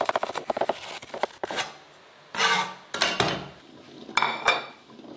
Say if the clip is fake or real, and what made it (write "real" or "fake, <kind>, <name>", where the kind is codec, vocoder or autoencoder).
real